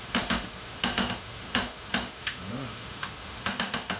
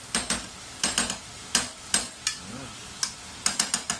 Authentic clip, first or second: second